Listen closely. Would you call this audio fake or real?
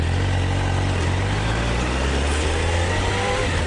real